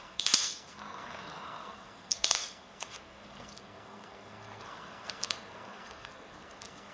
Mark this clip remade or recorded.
remade